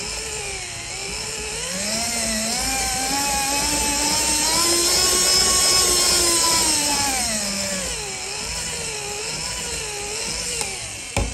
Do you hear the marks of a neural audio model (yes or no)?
no